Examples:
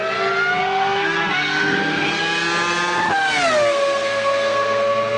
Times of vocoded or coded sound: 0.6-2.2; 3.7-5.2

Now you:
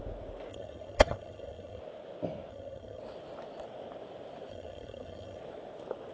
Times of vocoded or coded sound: 0.5-1.8; 2.5-3.0; 4.5-5.4

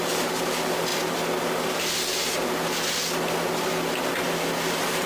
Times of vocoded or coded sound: none

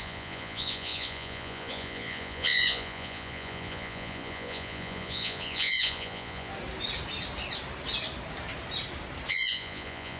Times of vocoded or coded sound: 0.0-6.5; 9.3-10.2

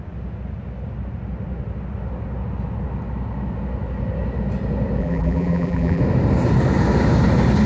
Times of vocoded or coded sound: 5.0-6.0

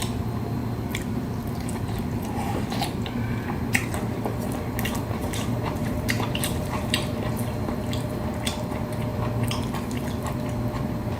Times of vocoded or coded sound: 5.2-7.3

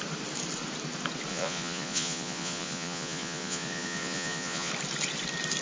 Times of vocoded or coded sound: 1.3-4.7